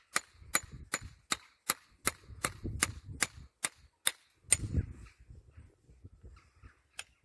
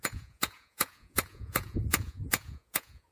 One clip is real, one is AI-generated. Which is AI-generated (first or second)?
second